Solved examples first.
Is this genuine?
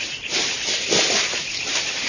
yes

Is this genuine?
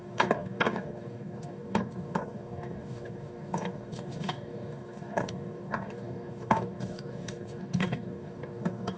no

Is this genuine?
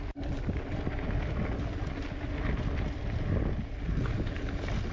yes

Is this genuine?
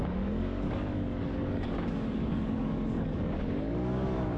no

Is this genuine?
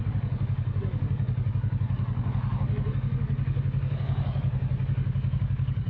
no